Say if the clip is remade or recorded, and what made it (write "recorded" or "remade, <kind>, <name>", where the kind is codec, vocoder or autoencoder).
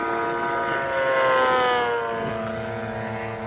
recorded